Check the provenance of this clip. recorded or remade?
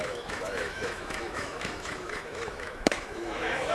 remade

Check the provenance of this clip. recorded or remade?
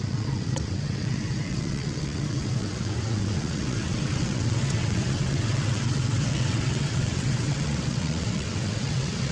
remade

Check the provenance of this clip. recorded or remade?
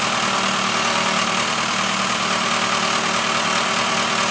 recorded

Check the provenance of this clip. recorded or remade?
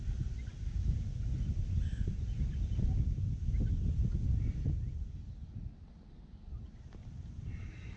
recorded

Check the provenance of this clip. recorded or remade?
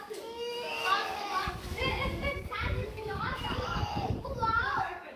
remade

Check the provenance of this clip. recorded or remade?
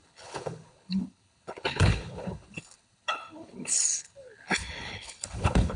remade